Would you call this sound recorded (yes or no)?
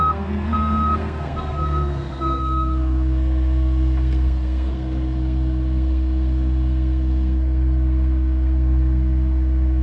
no